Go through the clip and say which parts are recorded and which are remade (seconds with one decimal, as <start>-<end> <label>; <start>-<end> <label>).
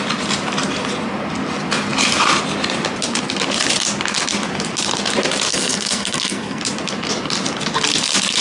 0.0-5.5 recorded; 5.5-6.6 remade; 6.6-8.4 recorded